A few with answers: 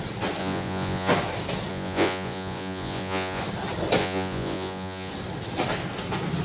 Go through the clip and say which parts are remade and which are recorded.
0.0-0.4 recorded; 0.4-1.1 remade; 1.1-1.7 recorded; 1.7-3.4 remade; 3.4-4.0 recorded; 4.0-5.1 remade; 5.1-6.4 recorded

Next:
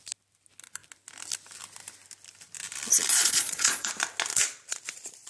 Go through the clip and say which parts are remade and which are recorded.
0.0-3.1 recorded; 3.1-3.9 remade; 3.9-5.3 recorded

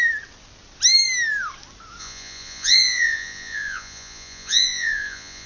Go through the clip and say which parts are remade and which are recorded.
0.0-2.0 recorded; 2.0-5.5 remade

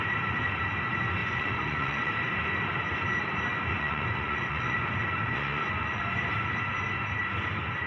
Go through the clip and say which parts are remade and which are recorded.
0.0-1.2 recorded; 1.2-2.1 remade; 2.1-3.7 recorded; 3.7-6.0 remade; 6.0-7.9 recorded

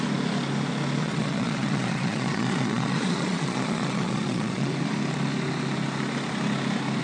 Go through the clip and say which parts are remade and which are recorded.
0.0-1.0 recorded; 1.0-4.7 remade; 4.7-7.0 recorded

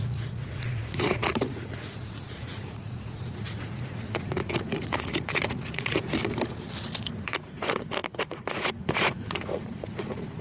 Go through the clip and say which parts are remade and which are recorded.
0.0-6.2 remade; 6.2-7.0 recorded; 7.0-10.4 remade